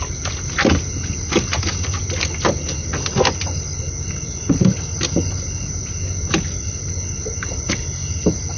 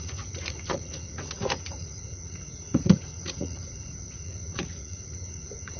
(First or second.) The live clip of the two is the first